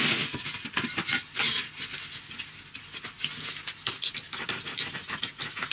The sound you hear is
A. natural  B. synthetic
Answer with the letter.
A